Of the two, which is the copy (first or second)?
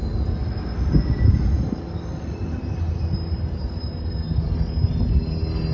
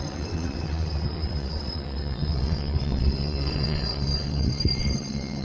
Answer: second